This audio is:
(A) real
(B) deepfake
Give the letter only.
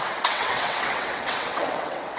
B